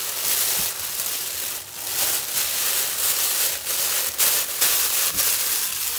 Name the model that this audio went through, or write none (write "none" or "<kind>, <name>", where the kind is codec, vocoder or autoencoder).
none